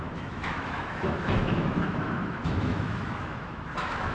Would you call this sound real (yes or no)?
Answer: no